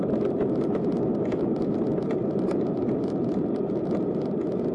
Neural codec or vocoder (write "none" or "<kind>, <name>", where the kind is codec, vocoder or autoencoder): none